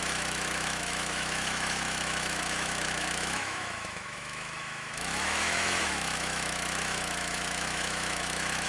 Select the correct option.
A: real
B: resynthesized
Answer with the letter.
B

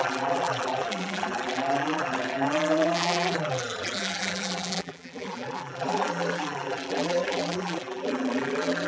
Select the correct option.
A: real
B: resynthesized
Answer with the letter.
B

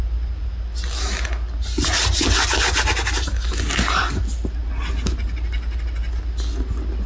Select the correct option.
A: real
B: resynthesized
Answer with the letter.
A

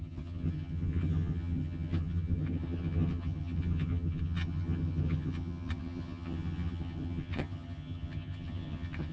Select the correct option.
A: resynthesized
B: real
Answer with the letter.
A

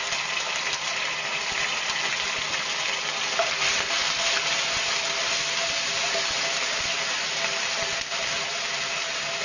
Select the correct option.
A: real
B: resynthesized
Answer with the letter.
A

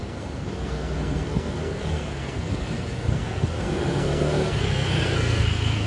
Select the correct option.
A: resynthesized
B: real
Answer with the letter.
A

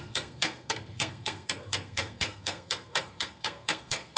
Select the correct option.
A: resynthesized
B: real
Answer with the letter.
A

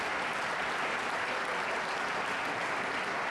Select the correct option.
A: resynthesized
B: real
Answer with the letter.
B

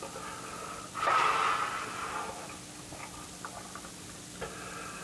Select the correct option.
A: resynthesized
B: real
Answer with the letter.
B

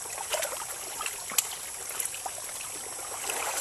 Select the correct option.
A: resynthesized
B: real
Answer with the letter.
B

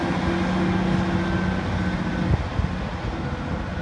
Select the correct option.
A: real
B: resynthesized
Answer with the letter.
A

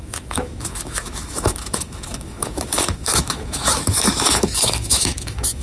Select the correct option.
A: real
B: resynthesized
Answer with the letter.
B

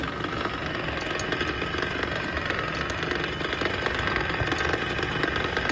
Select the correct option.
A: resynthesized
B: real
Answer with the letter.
B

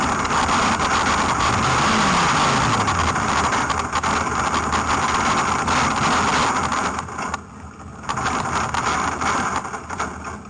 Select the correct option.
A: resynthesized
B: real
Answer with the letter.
B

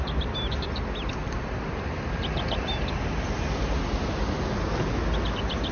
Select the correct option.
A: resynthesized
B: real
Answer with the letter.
B